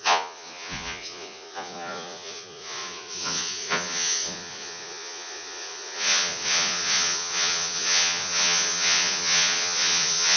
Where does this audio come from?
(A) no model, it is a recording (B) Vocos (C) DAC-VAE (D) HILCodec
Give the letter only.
B